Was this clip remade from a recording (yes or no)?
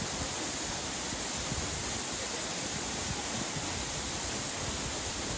no